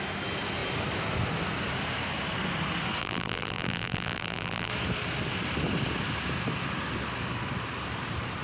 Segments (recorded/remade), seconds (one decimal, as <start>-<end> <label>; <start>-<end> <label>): 0.0-3.0 recorded; 3.0-4.7 remade; 4.7-8.4 recorded